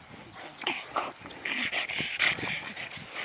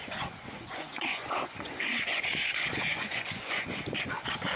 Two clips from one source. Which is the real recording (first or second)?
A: first